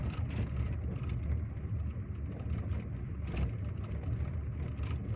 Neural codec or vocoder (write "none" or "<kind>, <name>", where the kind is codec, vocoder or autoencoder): none